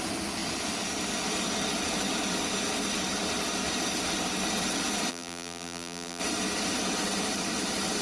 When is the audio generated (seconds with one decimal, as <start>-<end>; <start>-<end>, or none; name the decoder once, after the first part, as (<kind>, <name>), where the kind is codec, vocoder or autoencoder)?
5.1-6.2 (vocoder, BigVGAN v2)

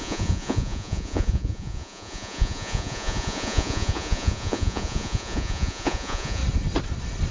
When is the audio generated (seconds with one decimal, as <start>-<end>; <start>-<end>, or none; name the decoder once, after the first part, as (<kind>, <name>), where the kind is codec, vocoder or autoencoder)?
0.0-6.4 (vocoder, Vocos)

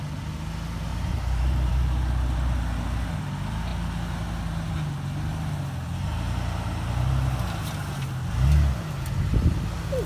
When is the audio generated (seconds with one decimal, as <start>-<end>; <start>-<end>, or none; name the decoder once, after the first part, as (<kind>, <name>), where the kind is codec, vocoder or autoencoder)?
0.9-1.8 (vocoder, BigVGAN v2)

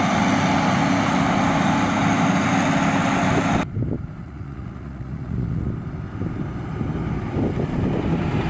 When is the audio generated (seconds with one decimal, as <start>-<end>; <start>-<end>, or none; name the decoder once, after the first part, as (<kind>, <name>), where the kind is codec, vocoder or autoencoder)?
4.2-5.7 (vocoder, Vocos)

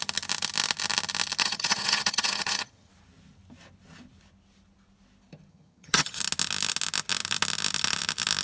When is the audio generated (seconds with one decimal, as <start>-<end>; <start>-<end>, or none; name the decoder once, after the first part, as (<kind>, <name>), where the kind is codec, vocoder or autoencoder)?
1.4-2.9 (vocoder, HiFi-GAN); 5.5-6.2

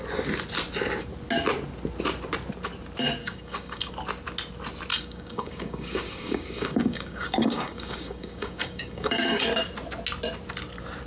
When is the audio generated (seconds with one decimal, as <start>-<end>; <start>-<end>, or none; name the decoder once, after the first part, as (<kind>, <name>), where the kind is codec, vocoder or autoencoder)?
3.2-3.9 (codec, DAC); 4.9-9.4

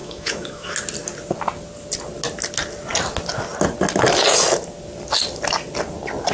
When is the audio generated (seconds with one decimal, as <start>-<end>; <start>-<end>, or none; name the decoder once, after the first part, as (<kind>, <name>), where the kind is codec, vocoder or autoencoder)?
0.0-0.7 (autoencoder, DAC-VAE)

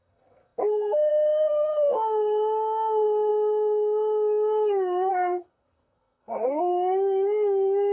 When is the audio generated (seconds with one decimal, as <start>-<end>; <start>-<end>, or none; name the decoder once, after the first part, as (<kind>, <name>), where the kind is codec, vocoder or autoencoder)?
0.0-7.9 (codec, SNAC)